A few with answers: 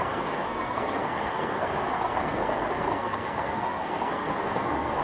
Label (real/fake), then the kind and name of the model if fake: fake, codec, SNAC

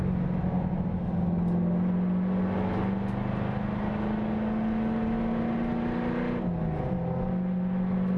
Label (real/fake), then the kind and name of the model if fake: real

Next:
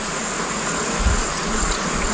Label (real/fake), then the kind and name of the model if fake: fake, vocoder, Vocos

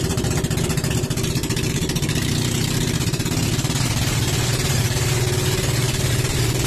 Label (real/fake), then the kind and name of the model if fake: fake, vocoder, BigVGAN v2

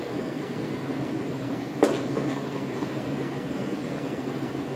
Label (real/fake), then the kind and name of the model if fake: fake, codec, SNAC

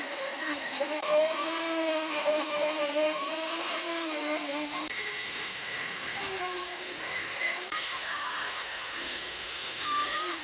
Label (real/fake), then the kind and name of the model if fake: fake, autoencoder, DAC-VAE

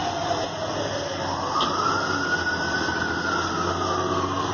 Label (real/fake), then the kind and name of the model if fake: real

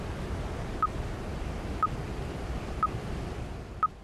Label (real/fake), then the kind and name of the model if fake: real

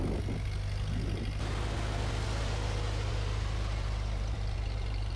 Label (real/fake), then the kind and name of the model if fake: real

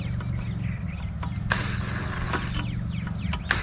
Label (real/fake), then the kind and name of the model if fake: real